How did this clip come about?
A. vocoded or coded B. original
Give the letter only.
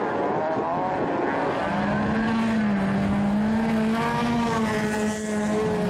B